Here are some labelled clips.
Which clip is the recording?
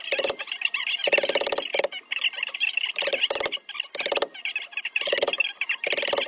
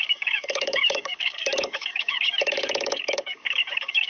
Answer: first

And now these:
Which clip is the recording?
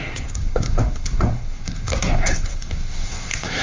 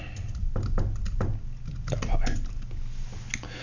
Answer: second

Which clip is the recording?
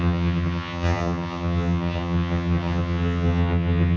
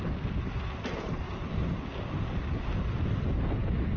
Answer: second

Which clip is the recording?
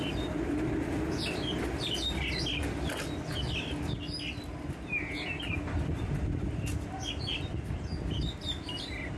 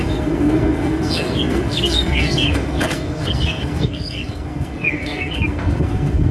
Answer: first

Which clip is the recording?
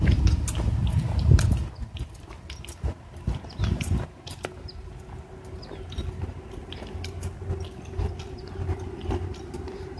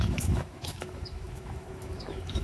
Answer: first